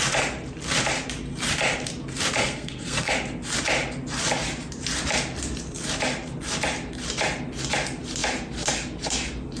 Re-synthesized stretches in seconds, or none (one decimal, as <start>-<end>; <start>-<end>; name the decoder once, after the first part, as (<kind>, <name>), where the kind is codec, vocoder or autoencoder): 2.4-3.1 (codec, SNAC)